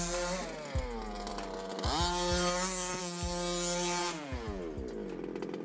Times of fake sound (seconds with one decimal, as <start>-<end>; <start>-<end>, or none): 4.0-4.6